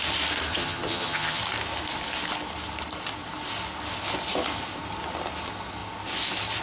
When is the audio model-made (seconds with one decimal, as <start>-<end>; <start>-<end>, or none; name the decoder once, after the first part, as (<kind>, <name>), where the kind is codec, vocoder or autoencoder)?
0.5-1.4 (vocoder, HiFi-GAN)